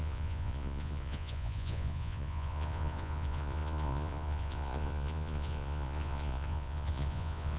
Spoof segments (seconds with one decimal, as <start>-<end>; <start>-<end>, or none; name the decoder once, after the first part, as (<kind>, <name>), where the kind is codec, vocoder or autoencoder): 0.0-7.6 (vocoder, Vocos)